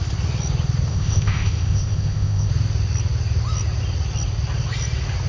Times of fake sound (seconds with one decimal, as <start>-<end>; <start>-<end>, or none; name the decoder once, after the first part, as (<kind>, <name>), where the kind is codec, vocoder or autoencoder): 0.9-2.5 (codec, ZipCodec)